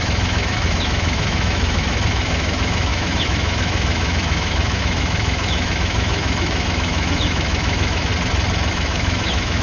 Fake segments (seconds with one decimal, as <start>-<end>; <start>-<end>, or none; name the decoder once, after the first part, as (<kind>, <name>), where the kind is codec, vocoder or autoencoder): 0.0-8.1 (autoencoder, DAC-VAE); 8.7-9.6